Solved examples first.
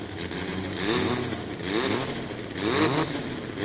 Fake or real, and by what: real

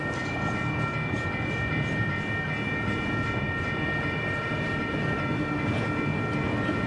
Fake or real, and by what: real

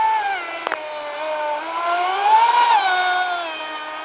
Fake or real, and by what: real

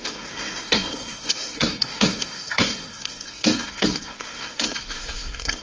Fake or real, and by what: fake, codec, SNAC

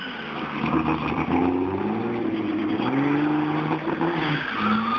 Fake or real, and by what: real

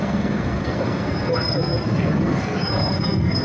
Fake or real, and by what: fake, codec, SNAC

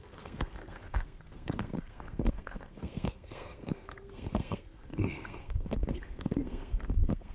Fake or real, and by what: fake, codec, SNAC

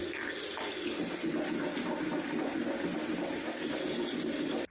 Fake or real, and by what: real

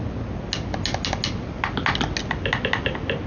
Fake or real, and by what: real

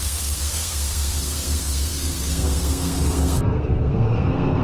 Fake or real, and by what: fake, codec, SNAC